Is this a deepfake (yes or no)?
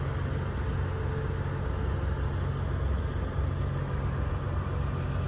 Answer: no